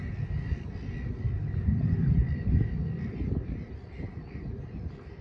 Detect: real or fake real